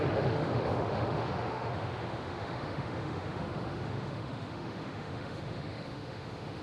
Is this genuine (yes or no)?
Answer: no